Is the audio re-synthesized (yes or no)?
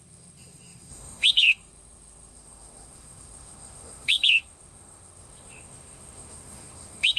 yes